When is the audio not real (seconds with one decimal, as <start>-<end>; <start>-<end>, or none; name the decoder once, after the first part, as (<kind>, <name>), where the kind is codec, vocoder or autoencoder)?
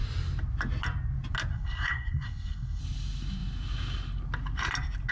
1.5-2.8 (codec, SNAC)